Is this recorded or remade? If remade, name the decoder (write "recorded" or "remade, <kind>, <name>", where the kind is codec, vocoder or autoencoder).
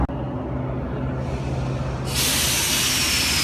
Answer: recorded